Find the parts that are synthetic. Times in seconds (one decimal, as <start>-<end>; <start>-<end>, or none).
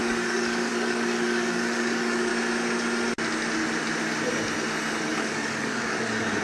0.0-2.3; 5.0-6.4